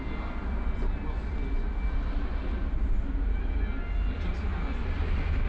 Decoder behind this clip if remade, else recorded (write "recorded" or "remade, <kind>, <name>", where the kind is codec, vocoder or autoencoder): recorded